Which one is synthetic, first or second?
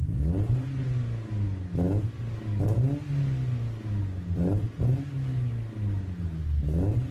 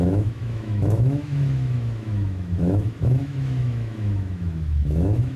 second